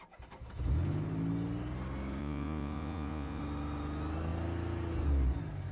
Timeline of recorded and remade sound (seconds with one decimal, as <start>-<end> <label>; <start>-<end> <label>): 0.0-2.2 recorded; 2.2-3.4 remade; 3.4-5.7 recorded